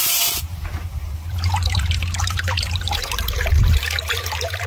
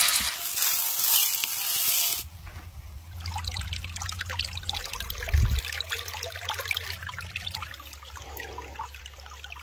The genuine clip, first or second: second